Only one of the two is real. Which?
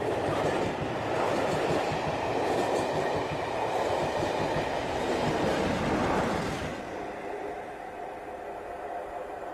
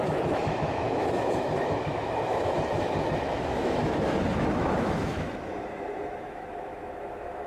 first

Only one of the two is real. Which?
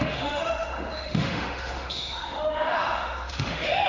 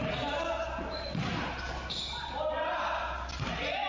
second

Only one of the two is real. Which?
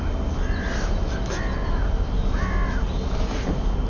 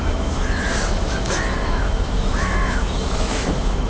first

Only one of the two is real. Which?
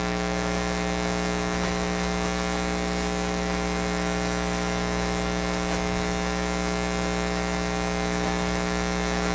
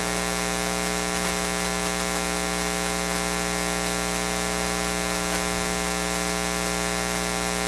second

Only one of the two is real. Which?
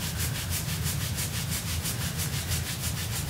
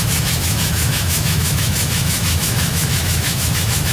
first